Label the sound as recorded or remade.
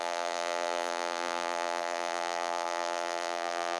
remade